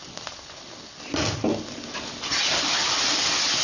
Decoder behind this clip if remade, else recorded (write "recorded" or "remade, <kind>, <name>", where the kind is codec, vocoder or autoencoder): recorded